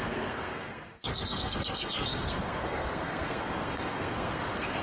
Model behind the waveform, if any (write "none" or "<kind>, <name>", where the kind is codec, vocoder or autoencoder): codec, SNAC